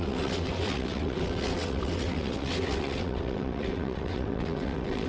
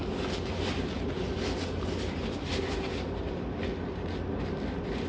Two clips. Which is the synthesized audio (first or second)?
first